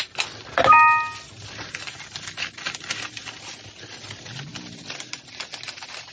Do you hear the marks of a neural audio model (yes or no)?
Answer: no